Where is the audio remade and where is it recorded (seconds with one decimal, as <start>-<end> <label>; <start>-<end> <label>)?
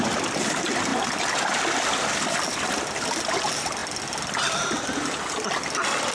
0.0-0.9 remade; 0.9-2.5 recorded; 2.5-6.1 remade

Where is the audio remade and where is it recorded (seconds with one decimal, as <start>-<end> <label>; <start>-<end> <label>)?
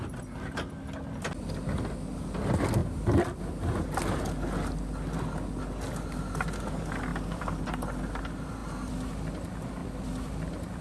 0.0-2.8 recorded; 2.8-3.4 remade; 3.4-7.1 recorded; 7.1-8.2 remade; 8.2-9.8 recorded; 9.8-10.8 remade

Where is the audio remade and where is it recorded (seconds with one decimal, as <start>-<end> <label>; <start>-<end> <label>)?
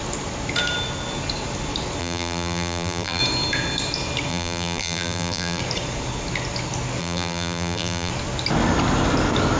0.0-2.0 recorded; 2.0-3.2 remade; 3.2-4.3 recorded; 4.3-5.6 remade; 5.6-7.0 recorded; 7.0-8.1 remade; 8.1-9.6 recorded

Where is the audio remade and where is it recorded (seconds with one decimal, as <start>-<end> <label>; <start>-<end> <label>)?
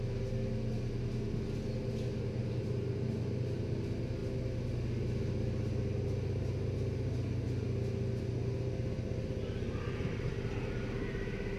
0.0-11.6 recorded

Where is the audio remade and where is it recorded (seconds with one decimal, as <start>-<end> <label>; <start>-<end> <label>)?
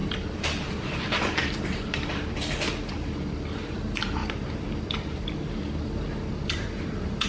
0.0-7.3 remade